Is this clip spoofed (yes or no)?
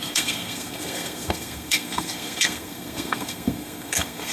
yes